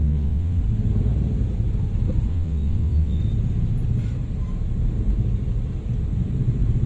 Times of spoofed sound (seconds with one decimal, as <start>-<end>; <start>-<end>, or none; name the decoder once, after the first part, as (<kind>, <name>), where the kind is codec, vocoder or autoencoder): 0.0-0.6 (vocoder, WaveNeXt); 2.3-3.2